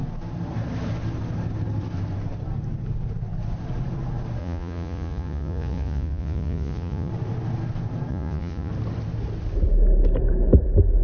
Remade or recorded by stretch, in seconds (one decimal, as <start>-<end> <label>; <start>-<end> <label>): 0.0-4.4 recorded; 4.4-7.1 remade; 7.1-8.1 recorded; 8.1-8.7 remade; 8.7-11.0 recorded

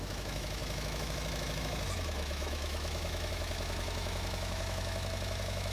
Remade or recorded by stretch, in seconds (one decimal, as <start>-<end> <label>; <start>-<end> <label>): 0.0-5.7 remade

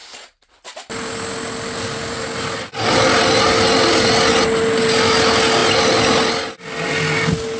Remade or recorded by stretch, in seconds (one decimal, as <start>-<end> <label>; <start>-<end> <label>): 0.0-7.6 recorded

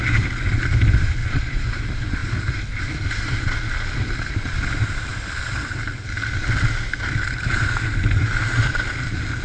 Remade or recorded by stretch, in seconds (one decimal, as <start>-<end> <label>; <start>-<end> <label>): 0.0-1.2 recorded; 1.2-1.7 remade; 1.7-9.4 recorded

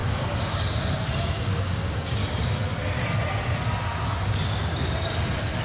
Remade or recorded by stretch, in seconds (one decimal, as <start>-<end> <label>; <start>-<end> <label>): 0.0-0.8 remade; 0.8-1.5 recorded; 1.5-2.2 remade; 2.2-5.6 recorded

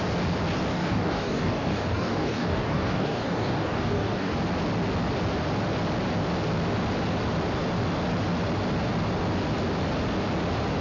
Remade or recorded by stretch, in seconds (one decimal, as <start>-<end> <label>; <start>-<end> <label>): 0.0-0.7 recorded; 0.7-4.3 remade; 4.3-10.8 recorded